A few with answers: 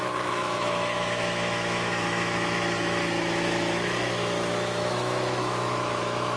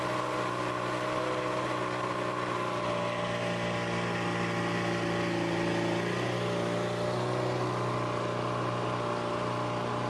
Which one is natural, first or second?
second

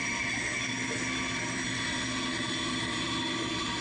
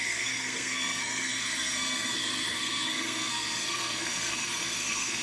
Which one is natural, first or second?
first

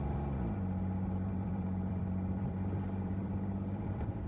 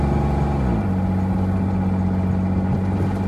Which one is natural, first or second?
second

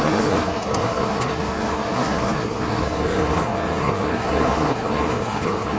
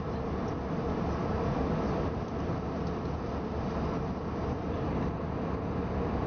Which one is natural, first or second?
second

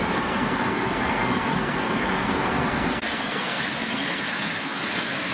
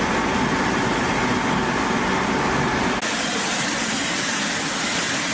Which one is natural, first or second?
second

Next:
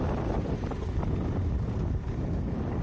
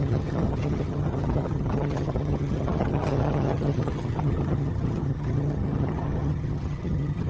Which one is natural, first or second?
first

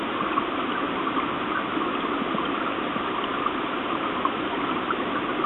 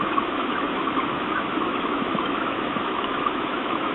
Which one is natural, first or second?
first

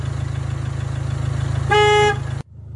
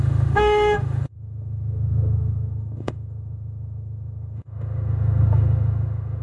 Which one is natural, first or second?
first